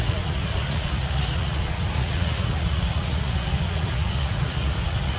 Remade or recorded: remade